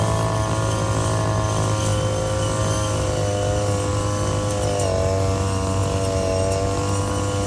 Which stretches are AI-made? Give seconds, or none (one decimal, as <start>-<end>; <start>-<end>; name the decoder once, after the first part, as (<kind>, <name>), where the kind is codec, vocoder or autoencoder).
none

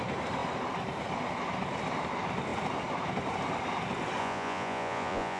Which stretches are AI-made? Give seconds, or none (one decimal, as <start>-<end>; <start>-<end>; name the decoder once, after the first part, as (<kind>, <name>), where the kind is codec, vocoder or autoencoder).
4.2-5.4 (vocoder, Vocos)

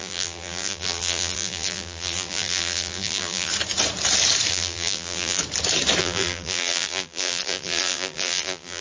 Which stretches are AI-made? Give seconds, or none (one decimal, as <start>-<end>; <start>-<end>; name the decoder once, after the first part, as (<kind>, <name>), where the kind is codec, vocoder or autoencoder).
0.0-3.5 (vocoder, BigVGAN v2); 4.5-5.4; 6.0-8.8